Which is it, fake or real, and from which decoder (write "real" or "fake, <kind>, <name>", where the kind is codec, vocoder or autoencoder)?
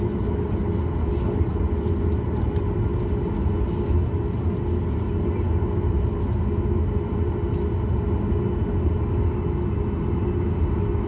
real